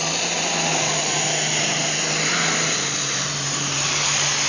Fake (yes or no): no